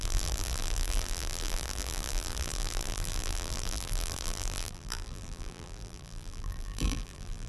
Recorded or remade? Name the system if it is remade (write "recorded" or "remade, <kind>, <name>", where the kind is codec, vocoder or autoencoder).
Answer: remade, vocoder, BigVGAN v2